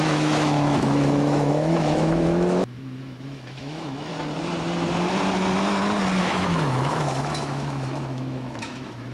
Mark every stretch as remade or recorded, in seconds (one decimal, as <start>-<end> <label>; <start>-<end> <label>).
0.0-4.1 remade; 4.1-6.2 recorded; 6.2-9.1 remade